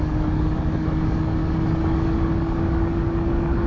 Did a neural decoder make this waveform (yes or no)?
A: yes